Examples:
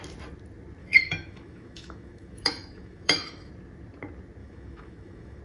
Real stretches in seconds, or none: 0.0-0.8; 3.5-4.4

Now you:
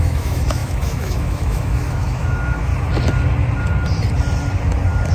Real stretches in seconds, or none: 2.7-5.1

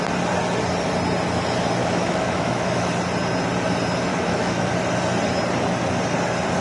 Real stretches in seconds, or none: 0.0-1.8; 2.9-4.1; 4.7-6.6

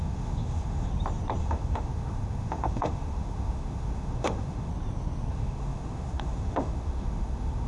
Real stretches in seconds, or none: 0.9-1.4; 4.7-5.3

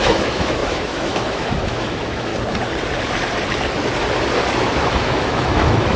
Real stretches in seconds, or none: 2.3-4.9